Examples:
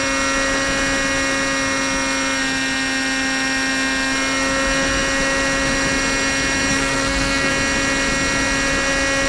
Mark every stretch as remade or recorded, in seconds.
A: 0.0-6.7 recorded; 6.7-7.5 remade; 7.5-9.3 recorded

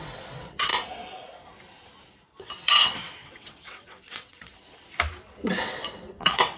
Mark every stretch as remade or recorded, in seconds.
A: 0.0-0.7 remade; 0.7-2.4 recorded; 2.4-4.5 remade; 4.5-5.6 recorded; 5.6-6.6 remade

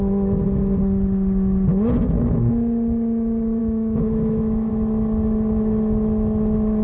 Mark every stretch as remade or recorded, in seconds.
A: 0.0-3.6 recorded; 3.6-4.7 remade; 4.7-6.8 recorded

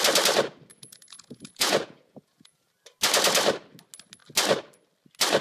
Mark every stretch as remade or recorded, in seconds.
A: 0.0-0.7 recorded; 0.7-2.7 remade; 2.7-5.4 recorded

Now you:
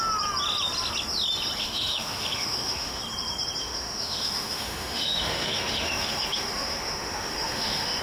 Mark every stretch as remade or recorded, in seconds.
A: 0.0-1.6 recorded; 1.6-3.0 remade; 3.0-3.6 recorded; 3.6-8.0 remade

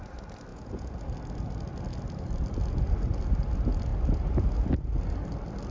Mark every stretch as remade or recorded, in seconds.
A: 0.0-0.5 recorded; 0.5-1.0 remade; 1.0-5.7 recorded

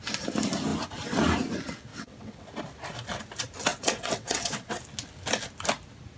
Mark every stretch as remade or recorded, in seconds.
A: 0.0-1.9 recorded; 1.9-2.5 remade; 2.5-3.7 recorded; 3.7-4.8 remade; 4.8-6.2 recorded

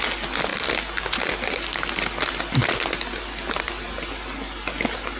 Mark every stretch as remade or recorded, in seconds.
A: 0.0-5.2 recorded